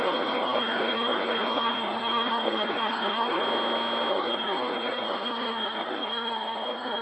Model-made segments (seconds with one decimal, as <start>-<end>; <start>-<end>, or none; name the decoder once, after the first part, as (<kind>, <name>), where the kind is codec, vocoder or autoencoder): 0.0-3.4 (codec, SNAC); 4.1-7.0